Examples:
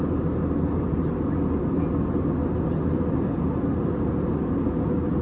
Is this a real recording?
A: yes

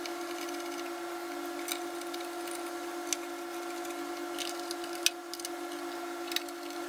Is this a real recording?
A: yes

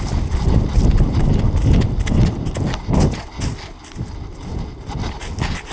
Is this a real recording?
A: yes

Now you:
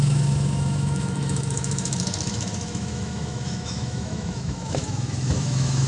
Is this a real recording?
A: no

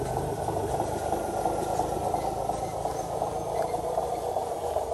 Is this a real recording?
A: no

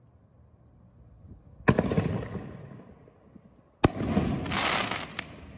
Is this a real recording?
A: yes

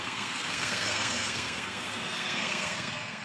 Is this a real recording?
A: no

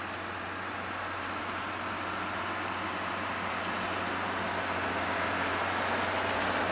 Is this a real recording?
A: yes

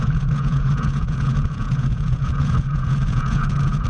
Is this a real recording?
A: no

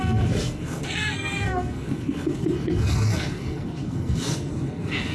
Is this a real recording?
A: no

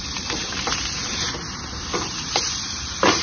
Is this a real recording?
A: no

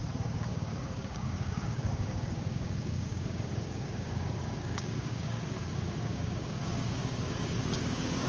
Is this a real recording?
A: no